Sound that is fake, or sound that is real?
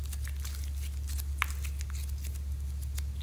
real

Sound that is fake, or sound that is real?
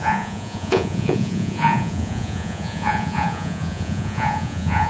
fake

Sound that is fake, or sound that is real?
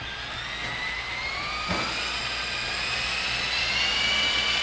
real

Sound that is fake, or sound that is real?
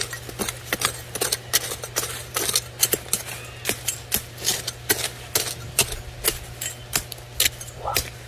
real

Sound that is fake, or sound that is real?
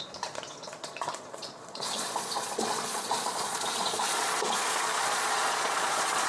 fake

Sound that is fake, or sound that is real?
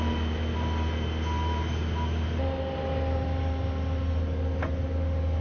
real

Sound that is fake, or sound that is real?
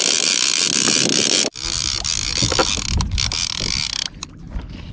real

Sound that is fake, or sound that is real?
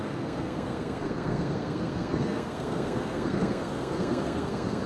fake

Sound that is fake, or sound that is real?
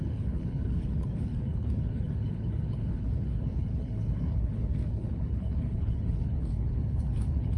fake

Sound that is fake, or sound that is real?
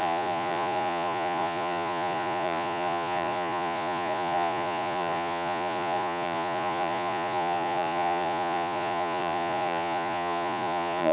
fake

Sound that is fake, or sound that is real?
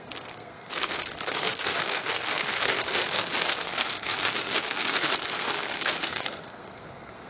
fake